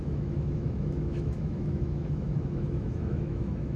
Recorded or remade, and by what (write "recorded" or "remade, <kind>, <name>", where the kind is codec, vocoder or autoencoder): remade, autoencoder, DAC-VAE